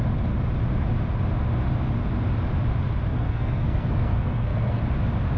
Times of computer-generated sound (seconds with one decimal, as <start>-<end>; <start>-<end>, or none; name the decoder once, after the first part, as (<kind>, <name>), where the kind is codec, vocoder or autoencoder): 3.1-4.8 (codec, SNAC)